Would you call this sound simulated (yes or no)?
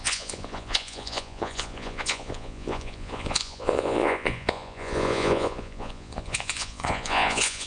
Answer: yes